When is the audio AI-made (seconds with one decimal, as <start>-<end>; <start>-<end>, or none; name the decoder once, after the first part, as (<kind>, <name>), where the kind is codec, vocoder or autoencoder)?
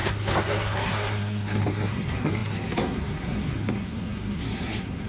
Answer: 0.0-5.1 (codec, SNAC)